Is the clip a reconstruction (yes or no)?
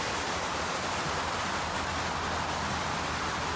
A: no